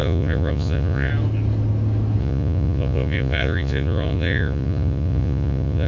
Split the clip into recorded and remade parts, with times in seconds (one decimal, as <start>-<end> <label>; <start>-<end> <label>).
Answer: 0.0-1.1 remade; 1.1-2.2 recorded; 2.2-5.9 remade